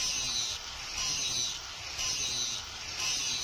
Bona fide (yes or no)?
yes